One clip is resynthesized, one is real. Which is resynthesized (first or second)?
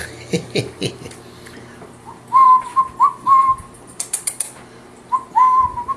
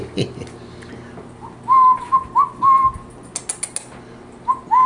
first